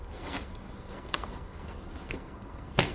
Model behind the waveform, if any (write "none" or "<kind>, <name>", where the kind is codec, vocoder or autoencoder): codec, SNAC